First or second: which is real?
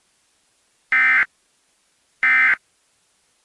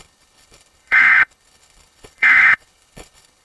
first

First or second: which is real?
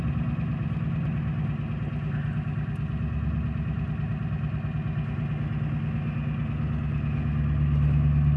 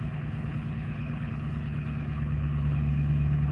first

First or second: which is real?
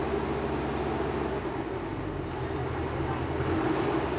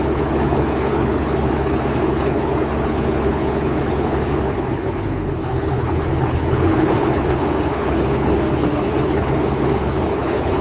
first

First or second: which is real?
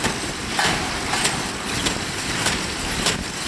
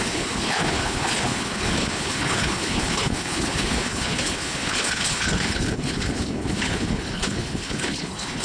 first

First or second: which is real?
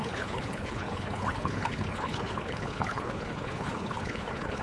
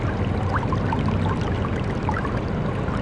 second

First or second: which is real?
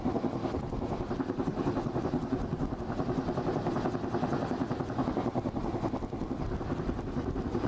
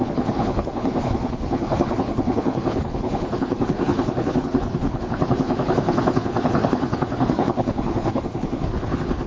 first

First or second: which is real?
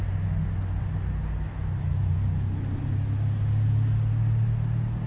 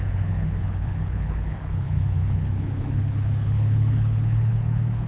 first